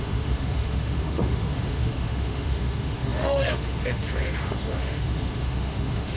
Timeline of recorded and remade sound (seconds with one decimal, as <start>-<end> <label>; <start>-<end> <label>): 0.0-6.2 remade